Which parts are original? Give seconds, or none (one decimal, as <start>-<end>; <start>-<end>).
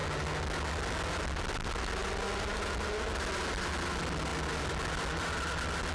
0.0-5.9